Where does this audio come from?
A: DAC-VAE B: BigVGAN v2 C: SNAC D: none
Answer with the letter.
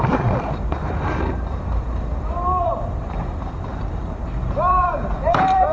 B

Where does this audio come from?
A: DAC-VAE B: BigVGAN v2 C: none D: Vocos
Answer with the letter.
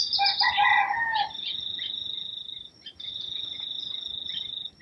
C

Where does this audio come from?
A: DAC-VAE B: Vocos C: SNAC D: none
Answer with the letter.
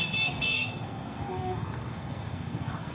C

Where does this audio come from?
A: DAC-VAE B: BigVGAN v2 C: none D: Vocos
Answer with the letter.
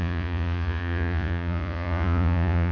D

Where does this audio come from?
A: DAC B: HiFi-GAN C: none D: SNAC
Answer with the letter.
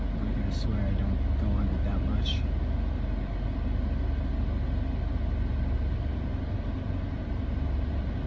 C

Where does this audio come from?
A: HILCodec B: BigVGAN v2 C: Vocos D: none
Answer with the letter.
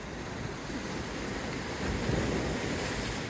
D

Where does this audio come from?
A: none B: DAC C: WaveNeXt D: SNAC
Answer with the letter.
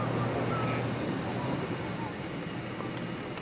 A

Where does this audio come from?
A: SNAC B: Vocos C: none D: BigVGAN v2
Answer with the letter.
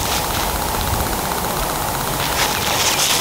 C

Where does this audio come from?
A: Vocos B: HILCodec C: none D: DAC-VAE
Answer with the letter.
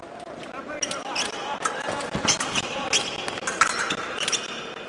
C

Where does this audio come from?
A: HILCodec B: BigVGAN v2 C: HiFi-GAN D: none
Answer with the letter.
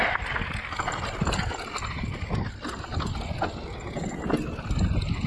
D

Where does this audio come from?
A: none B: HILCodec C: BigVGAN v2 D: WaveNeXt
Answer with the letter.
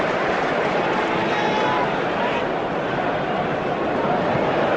A